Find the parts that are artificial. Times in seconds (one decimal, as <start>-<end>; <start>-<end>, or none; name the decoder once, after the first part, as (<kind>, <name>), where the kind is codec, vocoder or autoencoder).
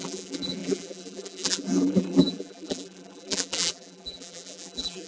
0.0-5.1 (vocoder, BigVGAN v2)